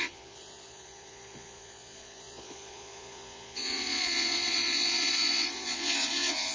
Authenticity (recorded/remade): remade